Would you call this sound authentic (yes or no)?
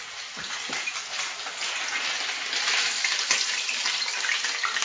yes